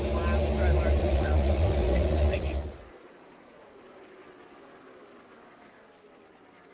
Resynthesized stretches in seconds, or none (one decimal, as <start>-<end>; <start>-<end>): 1.0-4.0